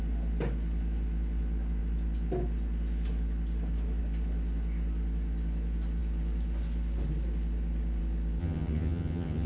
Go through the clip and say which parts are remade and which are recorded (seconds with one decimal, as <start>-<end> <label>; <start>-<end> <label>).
0.0-8.4 recorded; 8.4-9.5 remade